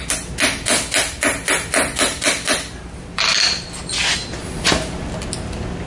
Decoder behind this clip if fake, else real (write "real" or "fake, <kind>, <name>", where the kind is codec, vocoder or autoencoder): real